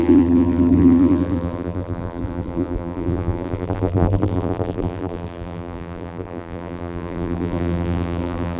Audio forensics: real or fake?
fake